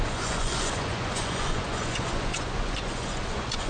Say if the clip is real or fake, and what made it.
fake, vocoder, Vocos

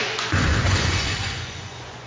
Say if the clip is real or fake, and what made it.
fake, vocoder, Vocos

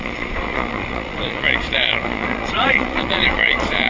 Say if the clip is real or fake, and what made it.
fake, vocoder, Vocos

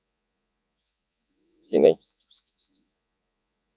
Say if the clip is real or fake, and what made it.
fake, vocoder, Vocos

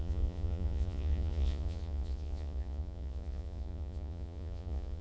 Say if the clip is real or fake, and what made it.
fake, vocoder, Vocos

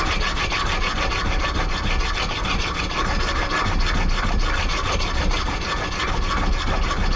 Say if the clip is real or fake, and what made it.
real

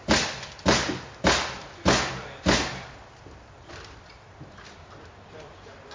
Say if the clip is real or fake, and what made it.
real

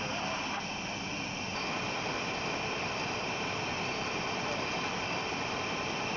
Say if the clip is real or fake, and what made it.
real